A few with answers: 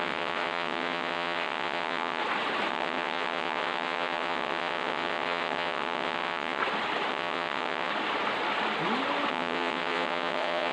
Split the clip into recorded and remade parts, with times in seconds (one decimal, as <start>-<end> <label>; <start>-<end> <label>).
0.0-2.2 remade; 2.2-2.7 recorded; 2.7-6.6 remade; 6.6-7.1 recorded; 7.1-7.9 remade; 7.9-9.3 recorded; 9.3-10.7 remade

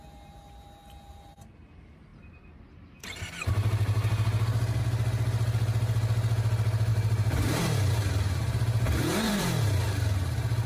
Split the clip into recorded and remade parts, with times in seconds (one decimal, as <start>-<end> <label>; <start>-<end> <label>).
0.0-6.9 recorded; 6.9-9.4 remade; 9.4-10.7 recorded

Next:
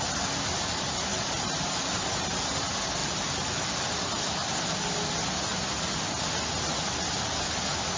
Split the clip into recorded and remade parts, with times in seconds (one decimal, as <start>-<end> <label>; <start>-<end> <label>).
0.0-1.1 recorded; 1.1-1.9 remade; 1.9-3.0 recorded; 3.0-4.2 remade; 4.2-8.0 recorded

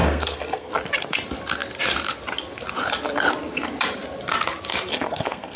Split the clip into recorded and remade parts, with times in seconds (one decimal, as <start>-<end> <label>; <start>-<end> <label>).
0.0-0.7 remade; 0.7-4.9 recorded; 4.9-5.6 remade